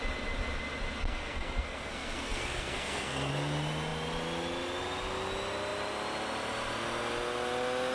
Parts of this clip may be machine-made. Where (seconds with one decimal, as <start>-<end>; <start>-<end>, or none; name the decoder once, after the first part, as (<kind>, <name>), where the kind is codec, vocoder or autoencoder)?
1.0-3.3 (codec, SNAC)